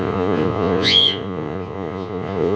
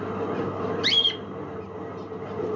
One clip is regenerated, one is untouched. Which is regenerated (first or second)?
first